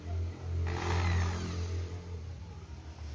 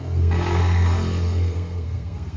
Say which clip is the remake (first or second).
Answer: second